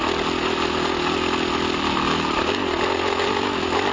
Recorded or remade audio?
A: recorded